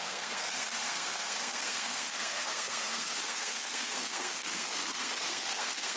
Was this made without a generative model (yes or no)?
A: no